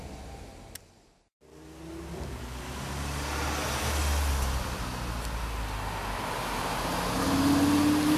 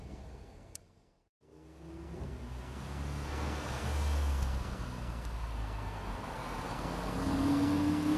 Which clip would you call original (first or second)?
first